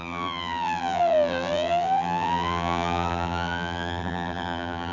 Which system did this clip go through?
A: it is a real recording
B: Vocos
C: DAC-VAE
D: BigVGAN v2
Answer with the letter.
D